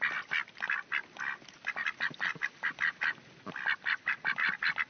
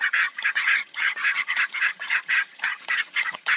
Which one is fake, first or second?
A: second